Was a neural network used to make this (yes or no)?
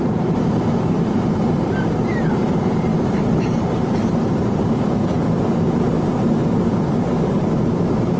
yes